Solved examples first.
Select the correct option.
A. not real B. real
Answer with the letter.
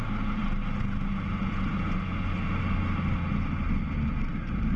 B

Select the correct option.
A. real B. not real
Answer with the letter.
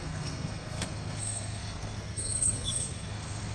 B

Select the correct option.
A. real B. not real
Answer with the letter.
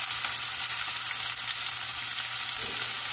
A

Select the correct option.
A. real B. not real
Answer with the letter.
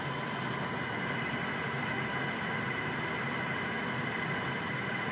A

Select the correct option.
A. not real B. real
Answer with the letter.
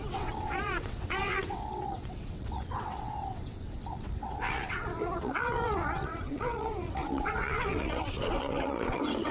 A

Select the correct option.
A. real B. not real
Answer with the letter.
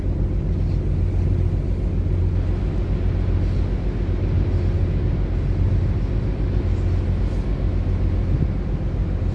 A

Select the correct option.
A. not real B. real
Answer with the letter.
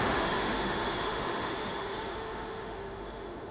A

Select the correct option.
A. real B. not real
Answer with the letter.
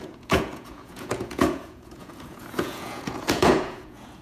B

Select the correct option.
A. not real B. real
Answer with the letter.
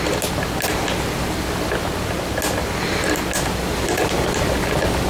B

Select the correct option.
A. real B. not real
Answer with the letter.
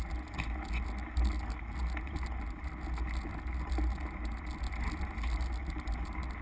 A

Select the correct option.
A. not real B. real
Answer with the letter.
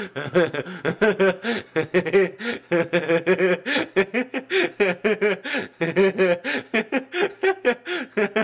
B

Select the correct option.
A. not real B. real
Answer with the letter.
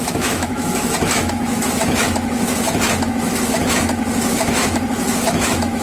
A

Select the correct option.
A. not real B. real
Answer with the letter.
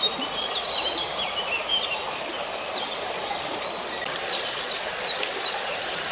A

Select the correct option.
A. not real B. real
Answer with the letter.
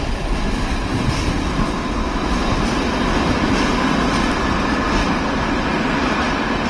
B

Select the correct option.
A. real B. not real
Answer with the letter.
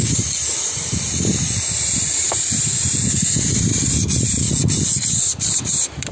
A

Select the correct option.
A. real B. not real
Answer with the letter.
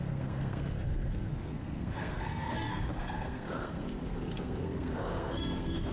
B